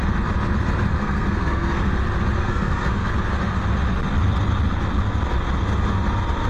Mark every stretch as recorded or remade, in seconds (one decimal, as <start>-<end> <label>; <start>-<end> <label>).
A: 0.0-1.0 recorded; 1.0-1.9 remade; 1.9-2.4 recorded; 2.4-3.1 remade; 3.1-6.5 recorded